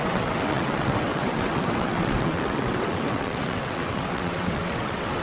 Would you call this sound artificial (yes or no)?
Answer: yes